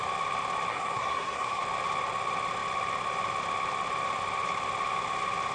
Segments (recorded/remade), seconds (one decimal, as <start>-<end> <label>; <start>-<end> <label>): 0.0-0.7 recorded; 0.7-1.6 remade; 1.6-5.5 recorded